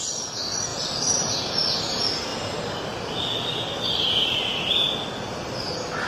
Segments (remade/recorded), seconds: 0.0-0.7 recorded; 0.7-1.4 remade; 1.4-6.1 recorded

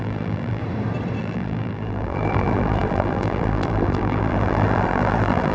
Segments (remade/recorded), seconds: 0.0-0.6 remade; 0.6-1.2 recorded; 1.2-5.5 remade

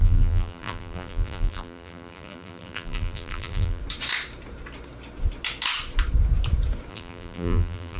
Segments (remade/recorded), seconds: 0.0-3.8 remade; 3.8-6.9 recorded; 6.9-8.0 remade

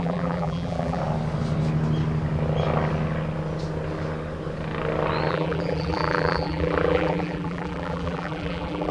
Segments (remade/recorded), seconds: 0.0-1.0 remade; 1.0-5.3 recorded; 5.3-8.9 remade

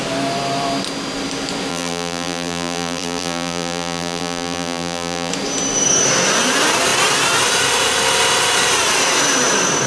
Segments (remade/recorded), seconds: 0.0-1.7 recorded; 1.7-5.3 remade; 5.3-9.9 recorded

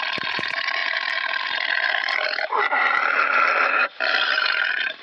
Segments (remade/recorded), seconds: 0.0-0.8 recorded; 0.8-1.4 remade; 1.4-3.8 recorded; 3.8-4.6 remade; 4.6-5.0 recorded

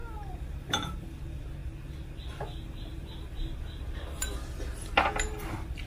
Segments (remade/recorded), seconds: 0.0-5.9 recorded